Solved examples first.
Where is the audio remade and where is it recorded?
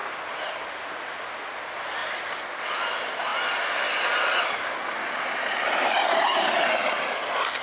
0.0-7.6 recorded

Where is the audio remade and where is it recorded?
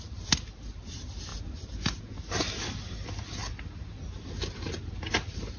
0.0-5.6 recorded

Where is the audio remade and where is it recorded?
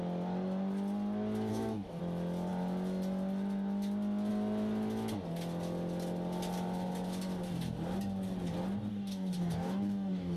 0.0-1.5 recorded; 1.5-2.0 remade; 2.0-8.9 recorded; 8.9-10.4 remade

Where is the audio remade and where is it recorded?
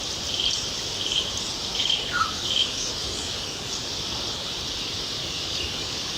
0.0-1.7 recorded; 1.7-3.9 remade; 3.9-5.2 recorded; 5.2-6.2 remade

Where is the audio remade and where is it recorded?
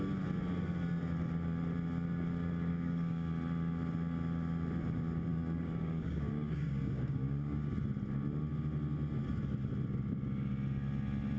0.0-2.7 recorded; 2.7-3.3 remade; 3.3-5.3 recorded; 5.3-7.7 remade; 7.7-11.4 recorded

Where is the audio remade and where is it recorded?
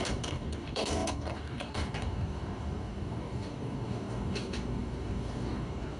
0.0-6.0 remade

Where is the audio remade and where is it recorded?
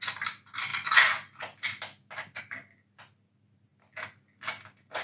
0.0-5.0 recorded